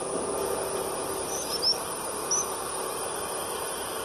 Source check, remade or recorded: recorded